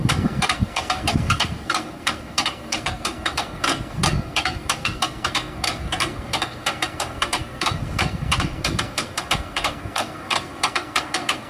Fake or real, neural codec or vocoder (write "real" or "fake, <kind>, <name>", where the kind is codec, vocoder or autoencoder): fake, codec, SNAC